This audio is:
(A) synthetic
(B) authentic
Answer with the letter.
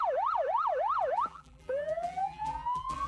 A